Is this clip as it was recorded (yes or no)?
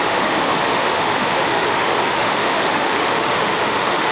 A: no